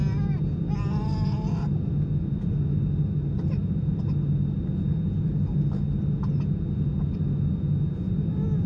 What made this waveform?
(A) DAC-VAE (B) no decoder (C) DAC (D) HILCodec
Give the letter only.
B